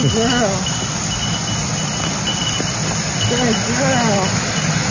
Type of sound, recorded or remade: recorded